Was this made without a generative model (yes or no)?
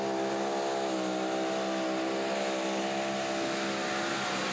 yes